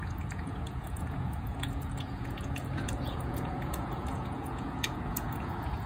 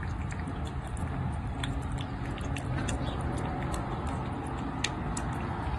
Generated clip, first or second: first